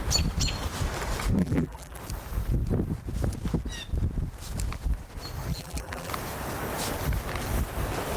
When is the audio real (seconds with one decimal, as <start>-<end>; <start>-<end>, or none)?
0.0-1.4; 2.0-5.5; 6.1-8.2